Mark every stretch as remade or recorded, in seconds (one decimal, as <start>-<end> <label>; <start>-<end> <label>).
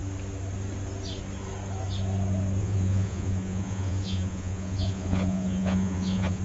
0.0-2.6 recorded; 2.6-6.4 remade